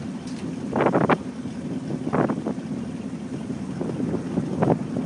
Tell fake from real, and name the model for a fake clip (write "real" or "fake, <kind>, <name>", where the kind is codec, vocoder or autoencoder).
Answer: real